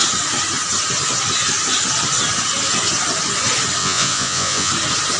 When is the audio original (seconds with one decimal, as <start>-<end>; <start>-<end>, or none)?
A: 0.0-3.8; 4.7-5.2